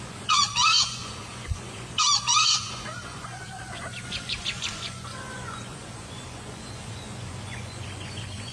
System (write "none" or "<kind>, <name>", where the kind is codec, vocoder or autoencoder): vocoder, Vocos